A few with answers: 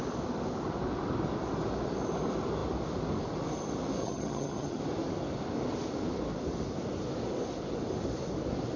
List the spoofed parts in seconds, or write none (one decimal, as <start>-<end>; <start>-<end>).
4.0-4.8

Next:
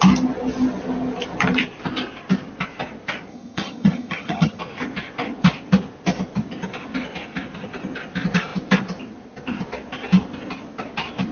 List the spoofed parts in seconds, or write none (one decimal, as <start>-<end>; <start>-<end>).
3.3-4.6

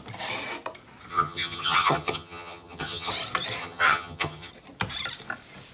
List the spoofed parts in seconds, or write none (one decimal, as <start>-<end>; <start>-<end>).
1.1-3.1; 3.6-4.5